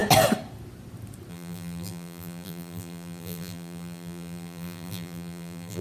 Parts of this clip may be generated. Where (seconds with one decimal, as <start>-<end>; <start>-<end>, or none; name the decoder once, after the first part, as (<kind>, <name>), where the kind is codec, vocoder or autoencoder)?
1.3-5.8 (vocoder, BigVGAN v2)